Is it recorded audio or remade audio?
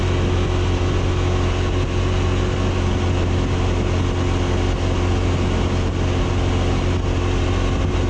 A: recorded